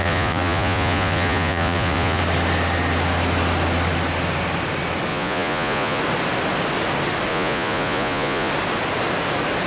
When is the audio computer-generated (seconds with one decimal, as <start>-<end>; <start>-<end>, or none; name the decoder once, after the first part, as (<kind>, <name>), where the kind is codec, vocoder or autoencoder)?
0.0-2.2 (vocoder, Vocos); 5.1-6.0; 7.3-8.5